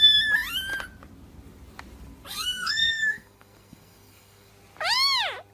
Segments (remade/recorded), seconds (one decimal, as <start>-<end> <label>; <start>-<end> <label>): 0.0-2.3 recorded; 2.3-4.5 remade; 4.5-5.5 recorded